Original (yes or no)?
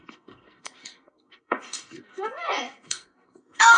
no